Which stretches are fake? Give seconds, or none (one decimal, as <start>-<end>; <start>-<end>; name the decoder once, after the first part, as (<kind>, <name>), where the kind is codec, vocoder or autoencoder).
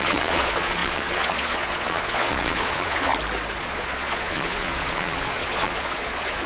0.0-3.1 (vocoder, Vocos); 3.6-6.5